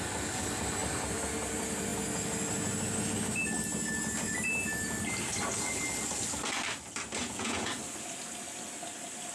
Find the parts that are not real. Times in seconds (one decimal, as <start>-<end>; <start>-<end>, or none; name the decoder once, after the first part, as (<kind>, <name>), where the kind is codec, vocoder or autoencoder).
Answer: 7.2-7.7 (vocoder, Vocos)